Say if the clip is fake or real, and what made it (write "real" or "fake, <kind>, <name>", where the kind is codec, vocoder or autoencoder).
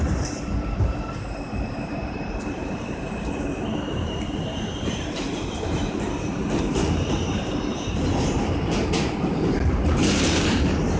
fake, vocoder, BigVGAN v2